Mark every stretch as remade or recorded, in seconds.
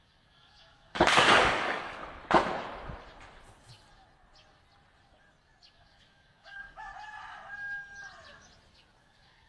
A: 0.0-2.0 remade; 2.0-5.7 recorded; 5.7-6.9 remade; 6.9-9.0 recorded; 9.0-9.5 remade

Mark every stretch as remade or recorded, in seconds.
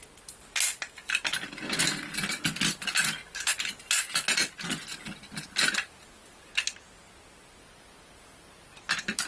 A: 0.0-9.3 recorded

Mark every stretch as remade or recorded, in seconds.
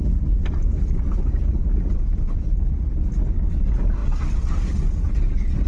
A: 0.0-1.5 recorded; 1.5-2.8 remade; 2.8-4.0 recorded; 4.0-4.8 remade; 4.8-5.7 recorded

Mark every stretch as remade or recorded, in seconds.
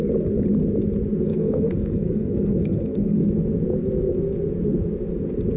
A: 0.0-1.3 recorded; 1.3-3.2 remade; 3.2-5.6 recorded